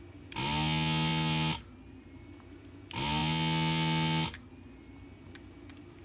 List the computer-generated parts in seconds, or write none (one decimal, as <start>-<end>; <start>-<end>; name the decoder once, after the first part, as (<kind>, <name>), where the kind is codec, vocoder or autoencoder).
none